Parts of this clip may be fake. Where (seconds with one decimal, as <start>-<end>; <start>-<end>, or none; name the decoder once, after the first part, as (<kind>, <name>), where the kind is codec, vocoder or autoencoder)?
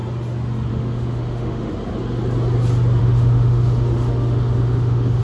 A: 0.7-1.7 (autoencoder, DAC-VAE); 3.0-5.2